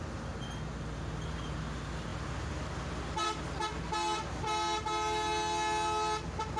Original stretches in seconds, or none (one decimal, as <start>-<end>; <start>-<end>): 0.0-6.6